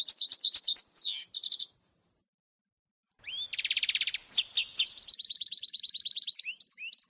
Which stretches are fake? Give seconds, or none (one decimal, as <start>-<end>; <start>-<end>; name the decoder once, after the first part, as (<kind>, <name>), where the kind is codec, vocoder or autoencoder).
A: 1.4-3.3 (vocoder, BigVGAN v2); 4.6-5.8